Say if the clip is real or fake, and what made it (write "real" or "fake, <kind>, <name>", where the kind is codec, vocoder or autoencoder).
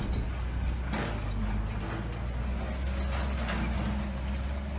real